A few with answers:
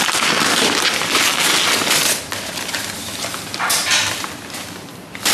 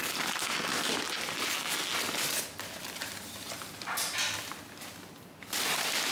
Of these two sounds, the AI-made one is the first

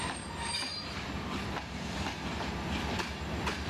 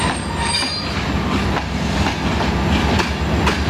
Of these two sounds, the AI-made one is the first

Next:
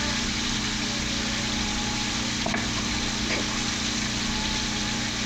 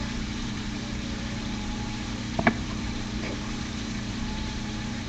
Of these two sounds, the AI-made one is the second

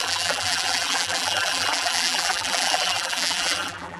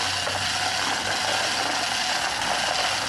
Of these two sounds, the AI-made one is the first